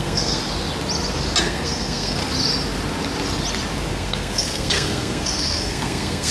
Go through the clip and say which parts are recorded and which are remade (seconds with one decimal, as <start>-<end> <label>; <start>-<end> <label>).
0.0-0.4 remade; 0.4-1.4 recorded; 1.4-2.2 remade; 2.2-3.9 recorded; 3.9-6.3 remade